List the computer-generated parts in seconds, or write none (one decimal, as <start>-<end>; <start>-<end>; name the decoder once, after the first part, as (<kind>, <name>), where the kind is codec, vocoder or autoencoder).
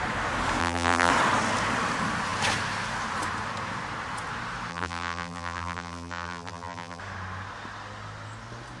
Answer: 0.6-1.1 (vocoder, BigVGAN v2); 4.7-7.0